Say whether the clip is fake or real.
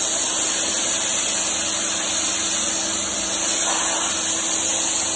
real